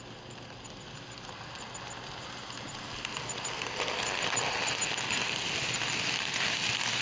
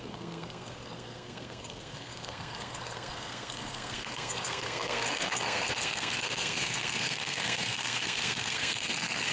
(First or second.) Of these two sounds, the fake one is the second